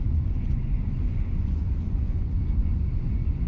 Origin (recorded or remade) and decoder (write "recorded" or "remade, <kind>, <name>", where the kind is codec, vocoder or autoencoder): remade, vocoder, Vocos